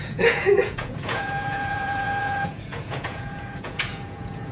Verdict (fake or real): fake